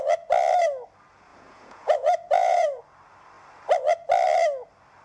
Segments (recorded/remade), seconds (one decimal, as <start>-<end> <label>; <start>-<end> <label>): 0.0-1.3 recorded; 1.3-2.8 remade; 2.8-5.0 recorded